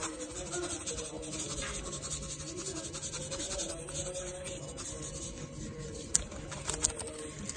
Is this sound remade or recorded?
recorded